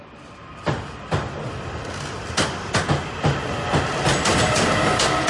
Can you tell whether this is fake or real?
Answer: real